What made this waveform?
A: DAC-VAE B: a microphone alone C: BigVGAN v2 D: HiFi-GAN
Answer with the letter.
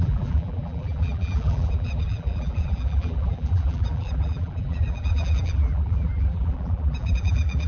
C